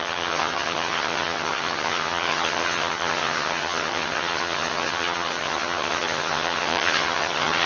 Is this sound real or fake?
fake